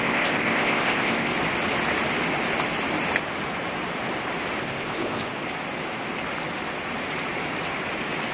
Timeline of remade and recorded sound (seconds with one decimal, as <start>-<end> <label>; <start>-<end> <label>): 0.0-1.3 remade; 1.3-4.6 recorded; 4.6-5.3 remade; 5.3-8.3 recorded